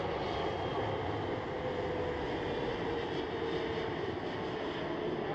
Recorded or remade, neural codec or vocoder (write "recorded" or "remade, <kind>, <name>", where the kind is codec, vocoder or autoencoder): recorded